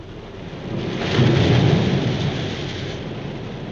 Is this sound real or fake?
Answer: real